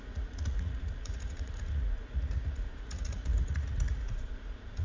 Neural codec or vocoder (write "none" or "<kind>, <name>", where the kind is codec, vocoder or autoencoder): vocoder, Vocos